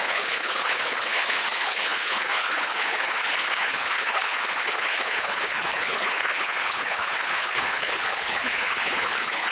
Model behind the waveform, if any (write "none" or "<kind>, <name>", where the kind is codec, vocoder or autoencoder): codec, HILCodec